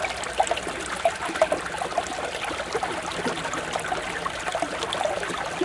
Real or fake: real